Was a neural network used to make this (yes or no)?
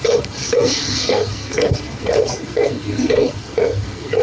yes